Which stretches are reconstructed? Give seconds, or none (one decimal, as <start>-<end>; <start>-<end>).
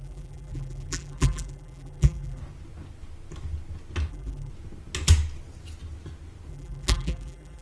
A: 0.0-2.4; 4.1-4.5; 6.5-7.6